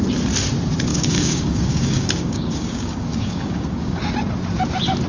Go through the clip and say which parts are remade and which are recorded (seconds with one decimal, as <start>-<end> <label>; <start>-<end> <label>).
0.0-0.9 recorded; 0.9-4.0 remade; 4.0-5.1 recorded